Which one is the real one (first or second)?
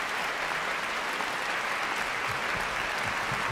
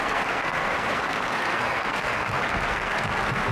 first